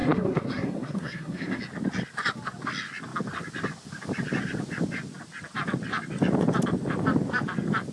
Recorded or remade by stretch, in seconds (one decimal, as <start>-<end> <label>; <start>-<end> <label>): 0.0-1.6 remade; 1.6-7.9 recorded

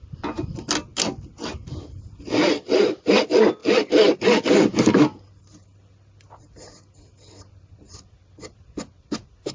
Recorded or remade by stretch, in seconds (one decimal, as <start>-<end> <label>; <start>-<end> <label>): 0.0-9.5 recorded

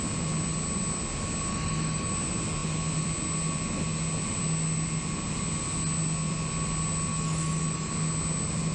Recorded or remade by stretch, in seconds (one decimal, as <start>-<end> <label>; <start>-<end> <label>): 0.0-1.5 recorded; 1.5-2.1 remade; 2.1-7.1 recorded; 7.1-7.9 remade; 7.9-8.7 recorded